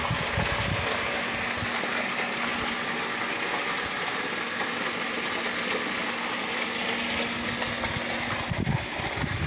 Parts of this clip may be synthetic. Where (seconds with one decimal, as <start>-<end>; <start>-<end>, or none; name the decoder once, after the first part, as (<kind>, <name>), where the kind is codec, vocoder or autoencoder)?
none